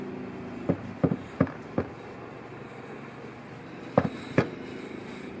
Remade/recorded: recorded